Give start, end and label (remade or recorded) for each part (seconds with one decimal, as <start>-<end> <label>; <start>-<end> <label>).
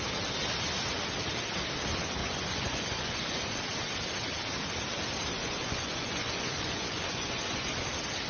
0.0-2.2 recorded; 2.2-3.4 remade; 3.4-5.4 recorded; 5.4-7.8 remade; 7.8-8.3 recorded